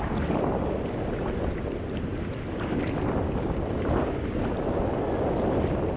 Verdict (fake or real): real